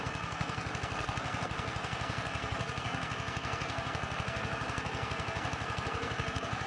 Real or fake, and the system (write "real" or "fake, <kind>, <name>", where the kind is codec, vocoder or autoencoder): fake, codec, SNAC